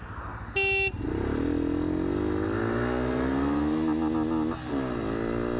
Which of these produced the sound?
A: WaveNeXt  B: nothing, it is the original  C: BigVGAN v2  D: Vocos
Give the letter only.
B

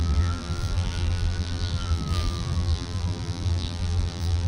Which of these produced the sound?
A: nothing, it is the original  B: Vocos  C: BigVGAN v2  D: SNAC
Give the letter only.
C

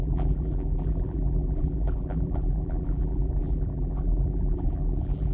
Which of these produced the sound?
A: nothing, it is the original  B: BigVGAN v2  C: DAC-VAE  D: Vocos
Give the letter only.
B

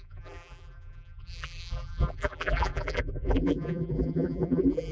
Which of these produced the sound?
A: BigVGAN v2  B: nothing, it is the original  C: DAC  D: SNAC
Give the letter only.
A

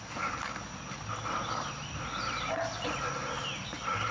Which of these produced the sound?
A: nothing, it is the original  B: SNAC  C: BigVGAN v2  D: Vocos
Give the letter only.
A